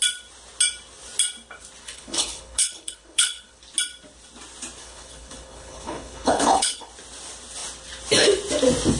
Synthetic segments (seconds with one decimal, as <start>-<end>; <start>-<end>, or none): 1.8-3.6; 4.8-6.9